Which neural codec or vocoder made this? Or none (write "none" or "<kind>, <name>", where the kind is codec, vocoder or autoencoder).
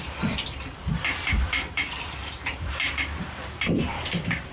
vocoder, BigVGAN v2